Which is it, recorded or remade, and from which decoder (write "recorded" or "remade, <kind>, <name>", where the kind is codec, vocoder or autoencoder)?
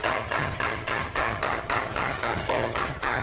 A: remade, vocoder, HiFi-GAN